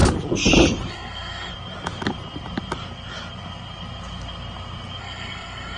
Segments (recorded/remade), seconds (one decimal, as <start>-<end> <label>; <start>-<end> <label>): 0.0-0.9 recorded; 0.9-1.5 remade; 1.5-5.0 recorded; 5.0-5.8 remade